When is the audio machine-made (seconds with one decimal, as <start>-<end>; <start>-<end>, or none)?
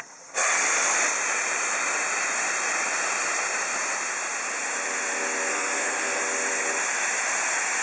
5.5-6.2